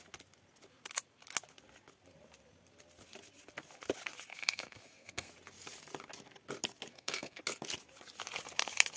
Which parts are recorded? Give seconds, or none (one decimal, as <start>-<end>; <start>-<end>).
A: 0.0-4.3; 5.3-6.9; 7.4-9.0